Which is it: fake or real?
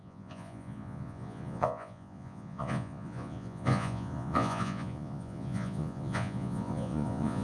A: fake